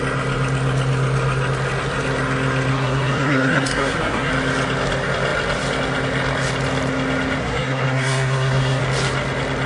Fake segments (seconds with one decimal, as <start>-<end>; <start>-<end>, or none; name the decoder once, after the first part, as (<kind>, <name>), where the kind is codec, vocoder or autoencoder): 2.7-4.3 (codec, SNAC); 7.4-8.8